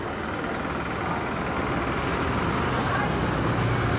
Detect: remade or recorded recorded